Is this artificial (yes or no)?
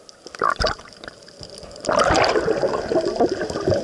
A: no